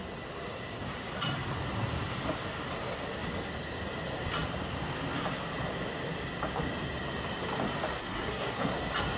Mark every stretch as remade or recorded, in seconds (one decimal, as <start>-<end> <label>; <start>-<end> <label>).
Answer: 0.0-8.0 recorded; 8.0-8.7 remade; 8.7-9.2 recorded